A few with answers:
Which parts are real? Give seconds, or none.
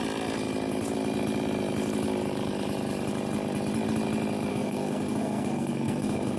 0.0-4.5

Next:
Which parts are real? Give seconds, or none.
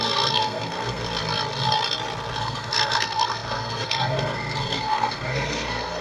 1.0-2.4